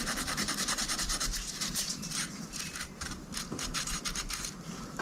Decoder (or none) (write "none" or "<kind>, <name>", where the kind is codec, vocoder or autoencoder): vocoder, BigVGAN v2